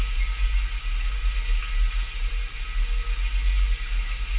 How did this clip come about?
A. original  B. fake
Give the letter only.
A